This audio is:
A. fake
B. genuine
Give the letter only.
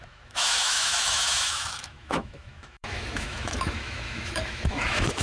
A